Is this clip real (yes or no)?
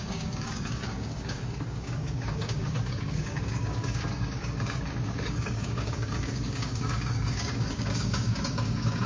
no